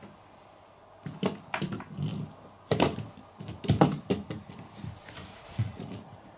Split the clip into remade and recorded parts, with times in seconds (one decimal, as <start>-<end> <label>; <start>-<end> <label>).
0.0-5.2 recorded; 5.2-6.4 remade